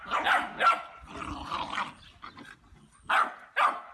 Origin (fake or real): real